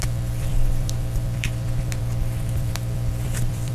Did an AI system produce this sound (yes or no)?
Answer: yes